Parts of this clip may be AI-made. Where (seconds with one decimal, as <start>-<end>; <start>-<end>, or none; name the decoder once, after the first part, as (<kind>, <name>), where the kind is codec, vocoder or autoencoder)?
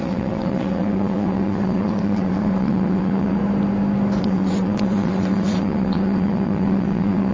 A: 0.0-3.4 (vocoder, WaveNeXt); 4.2-7.3